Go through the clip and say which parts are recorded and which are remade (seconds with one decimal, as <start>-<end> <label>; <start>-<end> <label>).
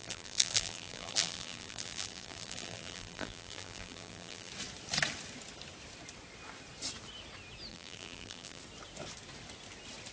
0.0-4.5 remade; 4.5-7.7 recorded; 7.7-8.6 remade; 8.6-10.1 recorded